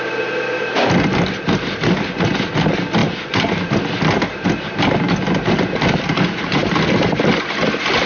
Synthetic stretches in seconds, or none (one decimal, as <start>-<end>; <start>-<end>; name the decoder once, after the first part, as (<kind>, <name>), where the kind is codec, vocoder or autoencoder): none